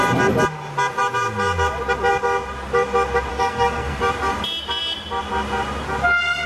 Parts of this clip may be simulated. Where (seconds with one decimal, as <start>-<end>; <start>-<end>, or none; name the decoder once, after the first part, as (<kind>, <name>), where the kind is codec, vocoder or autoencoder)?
3.3-4.0 (codec, SNAC)

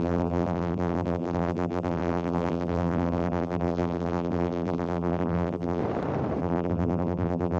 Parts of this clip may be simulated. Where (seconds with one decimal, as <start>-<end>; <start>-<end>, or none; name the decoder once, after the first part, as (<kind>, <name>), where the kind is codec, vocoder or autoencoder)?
0.0-5.8 (vocoder, BigVGAN v2); 6.4-7.6